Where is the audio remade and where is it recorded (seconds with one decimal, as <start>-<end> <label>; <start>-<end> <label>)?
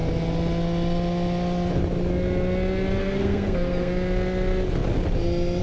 0.0-3.0 recorded; 3.0-3.9 remade; 3.9-5.6 recorded